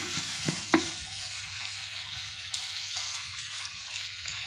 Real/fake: fake